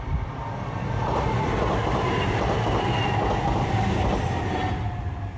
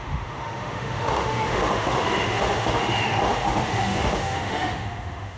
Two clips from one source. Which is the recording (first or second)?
first